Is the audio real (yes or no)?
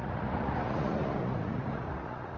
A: no